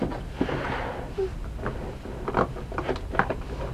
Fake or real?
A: real